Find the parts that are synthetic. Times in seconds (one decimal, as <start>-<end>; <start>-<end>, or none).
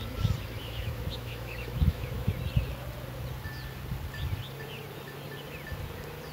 0.6-2.3